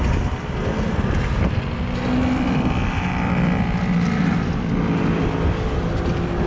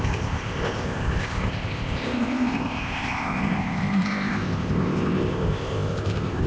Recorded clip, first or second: first